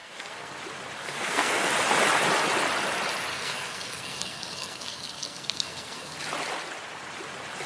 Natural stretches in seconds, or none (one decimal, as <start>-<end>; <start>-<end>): 0.6-1.0; 1.7-3.3; 6.2-7.7